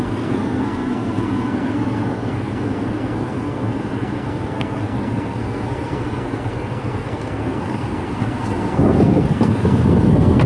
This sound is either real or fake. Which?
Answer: fake